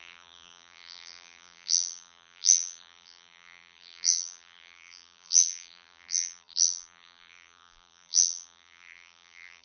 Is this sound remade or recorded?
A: remade